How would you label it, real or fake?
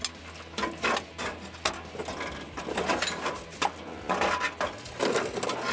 real